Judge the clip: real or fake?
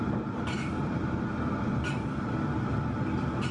real